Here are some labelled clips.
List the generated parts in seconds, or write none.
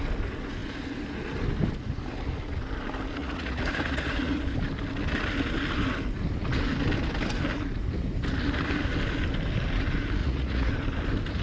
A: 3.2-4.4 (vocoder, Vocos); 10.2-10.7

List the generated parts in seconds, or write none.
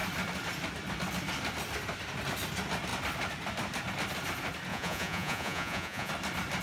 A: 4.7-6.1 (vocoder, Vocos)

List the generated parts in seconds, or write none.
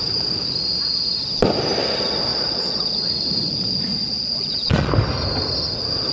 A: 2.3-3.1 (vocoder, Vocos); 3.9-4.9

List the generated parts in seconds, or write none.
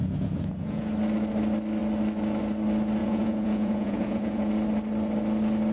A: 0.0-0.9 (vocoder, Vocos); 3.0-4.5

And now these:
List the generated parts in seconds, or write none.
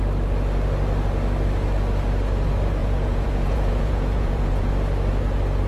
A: 2.8-4.7 (vocoder, Vocos)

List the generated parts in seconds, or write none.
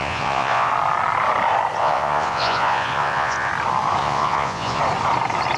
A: 0.0-0.7 (vocoder, Vocos); 1.8-3.5; 4.0-4.8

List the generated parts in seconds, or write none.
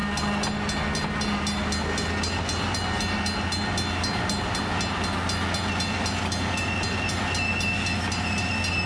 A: none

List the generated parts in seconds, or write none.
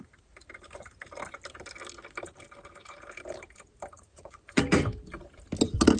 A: 4.1-4.6 (vocoder, Vocos)